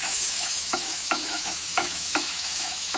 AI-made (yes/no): yes